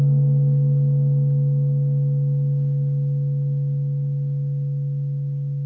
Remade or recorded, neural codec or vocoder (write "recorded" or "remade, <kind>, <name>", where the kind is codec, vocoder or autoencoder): recorded